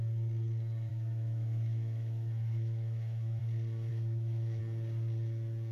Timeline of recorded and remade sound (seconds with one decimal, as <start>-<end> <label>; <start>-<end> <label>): 0.0-0.9 recorded; 0.9-3.4 remade; 3.4-3.9 recorded; 3.9-4.6 remade; 4.6-5.7 recorded